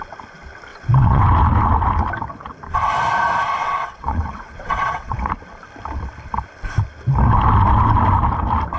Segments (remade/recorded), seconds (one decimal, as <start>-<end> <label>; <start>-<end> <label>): 0.0-0.7 recorded; 0.7-1.2 remade; 1.2-3.6 recorded; 3.6-5.3 remade; 5.3-8.8 recorded